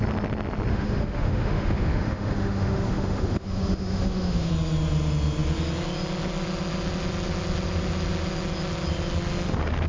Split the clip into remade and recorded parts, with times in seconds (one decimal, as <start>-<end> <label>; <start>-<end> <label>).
0.0-0.7 recorded; 0.7-4.5 remade; 4.5-9.9 recorded